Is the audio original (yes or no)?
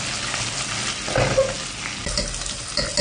yes